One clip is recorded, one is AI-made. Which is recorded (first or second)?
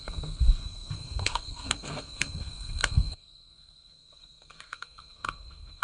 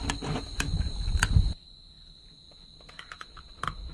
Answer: second